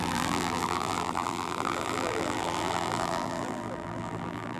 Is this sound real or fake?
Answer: fake